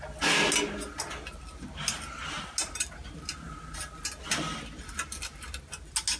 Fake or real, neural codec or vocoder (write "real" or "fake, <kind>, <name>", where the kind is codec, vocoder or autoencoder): real